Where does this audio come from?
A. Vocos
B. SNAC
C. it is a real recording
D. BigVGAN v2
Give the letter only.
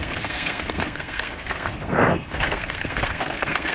B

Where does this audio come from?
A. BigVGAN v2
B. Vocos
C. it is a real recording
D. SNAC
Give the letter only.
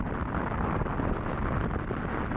C